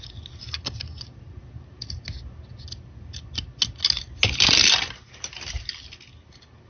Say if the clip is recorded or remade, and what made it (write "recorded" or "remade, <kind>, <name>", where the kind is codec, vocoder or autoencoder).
recorded